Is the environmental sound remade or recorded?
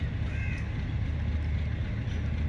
recorded